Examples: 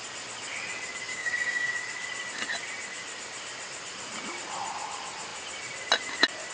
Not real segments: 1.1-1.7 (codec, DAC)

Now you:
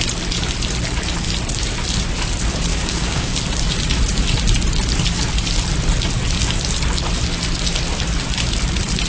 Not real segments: 2.7-3.3 (codec, DAC)

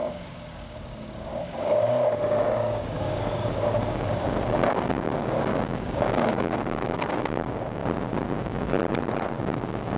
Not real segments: 0.0-7.8 (codec, DAC); 8.3-8.8; 9.4-10.0

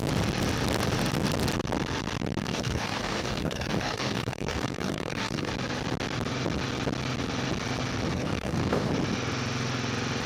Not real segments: 2.4-5.5 (codec, DAC); 8.1-8.9

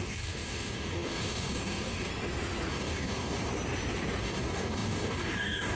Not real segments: 0.0-2.1 (codec, DAC); 2.7-3.5; 4.2-5.8

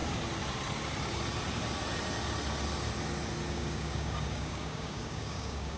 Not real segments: 3.5-5.8 (codec, DAC)